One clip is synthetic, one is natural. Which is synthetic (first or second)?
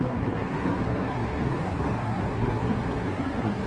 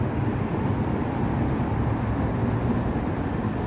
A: first